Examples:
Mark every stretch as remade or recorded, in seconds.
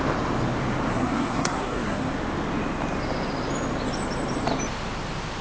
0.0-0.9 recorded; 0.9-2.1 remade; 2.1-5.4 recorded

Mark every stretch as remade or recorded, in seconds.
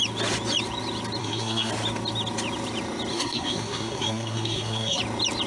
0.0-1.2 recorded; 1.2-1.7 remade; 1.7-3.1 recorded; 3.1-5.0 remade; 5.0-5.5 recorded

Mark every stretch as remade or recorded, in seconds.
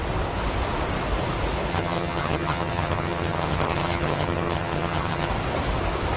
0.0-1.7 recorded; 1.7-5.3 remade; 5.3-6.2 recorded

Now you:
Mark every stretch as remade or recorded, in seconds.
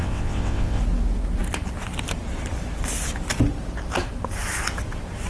0.0-0.8 remade; 0.8-5.3 recorded